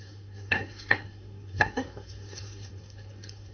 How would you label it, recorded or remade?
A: remade